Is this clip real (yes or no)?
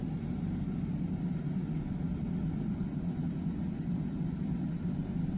yes